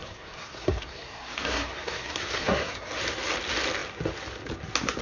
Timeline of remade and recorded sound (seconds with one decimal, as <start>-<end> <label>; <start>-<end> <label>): 0.0-3.0 remade; 3.0-5.0 recorded